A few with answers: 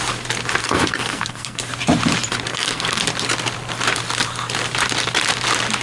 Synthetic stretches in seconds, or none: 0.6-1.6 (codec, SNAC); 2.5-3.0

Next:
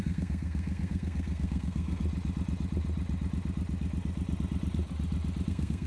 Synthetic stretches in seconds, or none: 0.0-2.0 (codec, SNAC); 5.5-5.9

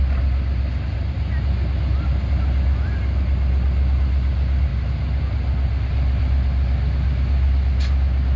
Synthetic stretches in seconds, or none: none

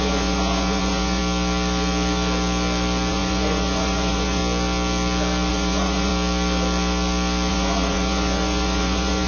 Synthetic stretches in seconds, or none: 0.0-1.2 (vocoder, Vocos); 3.1-4.4; 5.5-6.1; 7.5-9.3